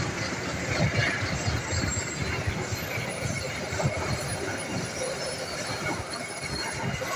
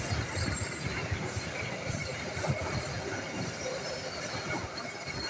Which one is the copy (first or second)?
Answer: second